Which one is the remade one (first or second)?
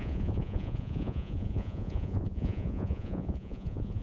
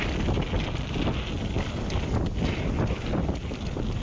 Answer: first